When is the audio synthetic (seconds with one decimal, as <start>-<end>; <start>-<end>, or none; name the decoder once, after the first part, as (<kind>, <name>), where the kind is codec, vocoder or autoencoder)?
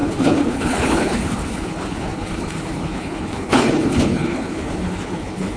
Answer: 0.0-5.6 (codec, HILCodec)